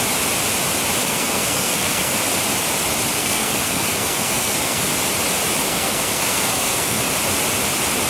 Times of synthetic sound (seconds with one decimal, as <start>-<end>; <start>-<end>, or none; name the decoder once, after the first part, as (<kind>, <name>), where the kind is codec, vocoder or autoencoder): 1.0-2.2 (codec, SNAC); 3.2-4.9; 5.6-7.1